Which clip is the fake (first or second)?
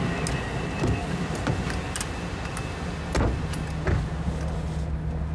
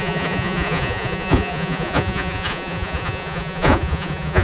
second